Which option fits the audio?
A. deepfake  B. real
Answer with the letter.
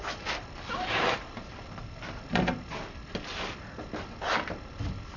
B